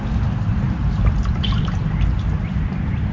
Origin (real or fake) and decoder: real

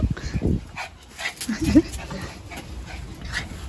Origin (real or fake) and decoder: real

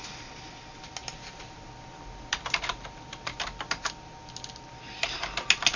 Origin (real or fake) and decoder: real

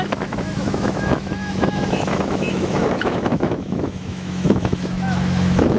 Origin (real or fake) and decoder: fake, autoencoder, DAC-VAE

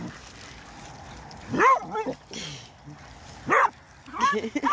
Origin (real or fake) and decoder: real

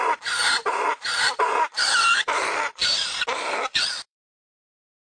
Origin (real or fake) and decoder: fake, vocoder, BigVGAN v2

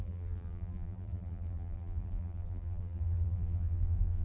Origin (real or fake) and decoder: fake, vocoder, BigVGAN v2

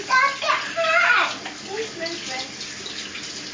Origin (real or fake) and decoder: real